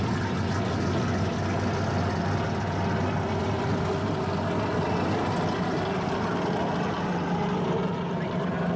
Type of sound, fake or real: real